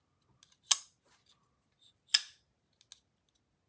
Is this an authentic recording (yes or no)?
yes